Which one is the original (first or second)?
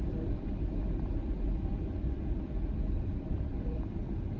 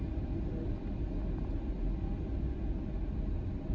second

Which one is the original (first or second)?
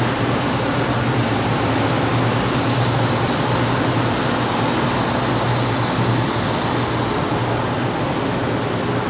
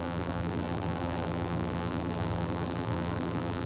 first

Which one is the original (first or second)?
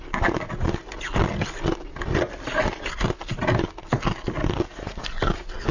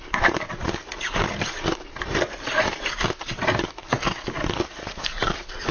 first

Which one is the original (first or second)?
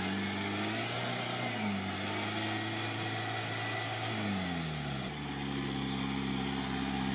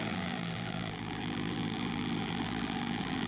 first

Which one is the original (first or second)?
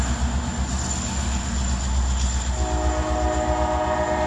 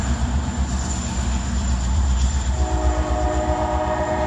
first